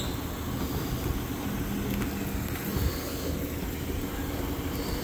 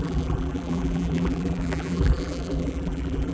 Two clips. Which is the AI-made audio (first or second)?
second